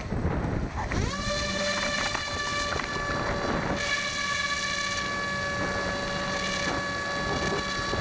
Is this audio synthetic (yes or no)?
no